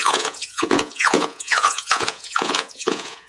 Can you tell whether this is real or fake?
fake